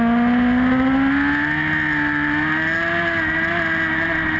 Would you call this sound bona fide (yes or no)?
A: yes